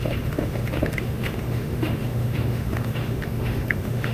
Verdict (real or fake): fake